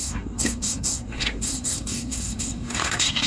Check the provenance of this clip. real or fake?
fake